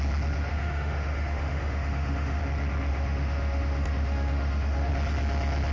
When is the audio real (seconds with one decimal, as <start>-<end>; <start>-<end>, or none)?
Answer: 0.0-0.5; 2.4-2.9; 4.9-5.7